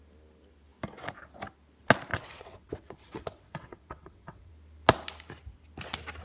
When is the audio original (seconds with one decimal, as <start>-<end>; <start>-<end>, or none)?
0.0-2.1; 4.5-6.2

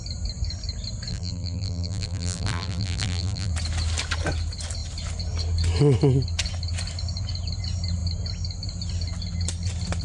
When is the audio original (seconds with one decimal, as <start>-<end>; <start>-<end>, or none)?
0.0-1.1; 3.5-10.0

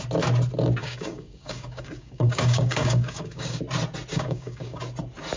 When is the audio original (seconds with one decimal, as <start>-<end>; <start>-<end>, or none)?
0.0-0.8; 3.6-4.1; 4.8-5.4

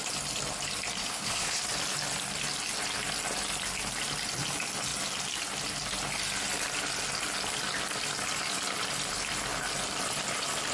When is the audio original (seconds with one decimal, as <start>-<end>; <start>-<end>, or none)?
0.0-1.0; 1.6-10.7

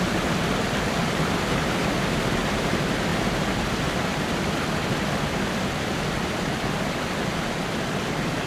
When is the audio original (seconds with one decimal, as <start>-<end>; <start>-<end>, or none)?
3.1-4.0